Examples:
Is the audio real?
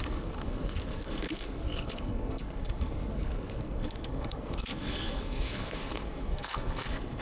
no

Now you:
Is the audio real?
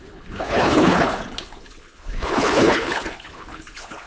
no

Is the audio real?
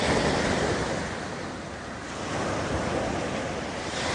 yes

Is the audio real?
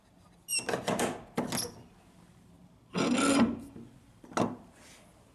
yes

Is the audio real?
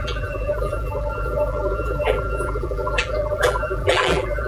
no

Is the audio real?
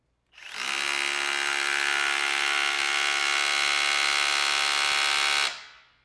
yes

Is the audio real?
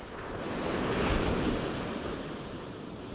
yes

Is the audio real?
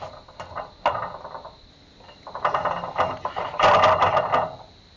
yes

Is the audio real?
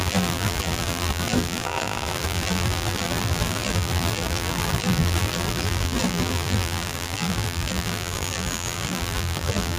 no